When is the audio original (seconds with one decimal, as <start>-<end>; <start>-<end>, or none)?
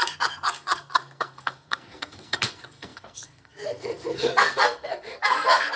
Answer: none